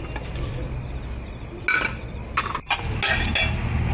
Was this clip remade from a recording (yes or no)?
no